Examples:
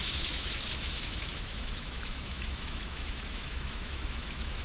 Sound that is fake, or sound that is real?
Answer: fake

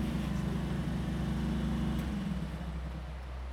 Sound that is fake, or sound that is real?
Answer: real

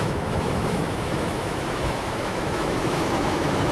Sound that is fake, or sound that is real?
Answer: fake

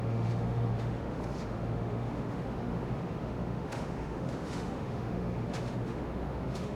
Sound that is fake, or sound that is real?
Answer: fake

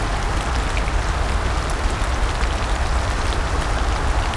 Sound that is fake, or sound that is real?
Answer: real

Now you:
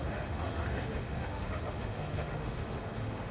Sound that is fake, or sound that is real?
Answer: fake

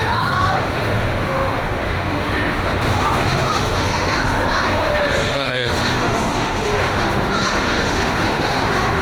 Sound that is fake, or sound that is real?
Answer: fake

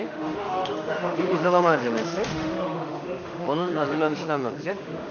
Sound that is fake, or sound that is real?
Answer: fake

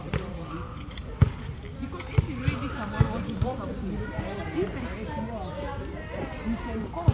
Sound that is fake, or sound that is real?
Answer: real